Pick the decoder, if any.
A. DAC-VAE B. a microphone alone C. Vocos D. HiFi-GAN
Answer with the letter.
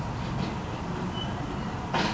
B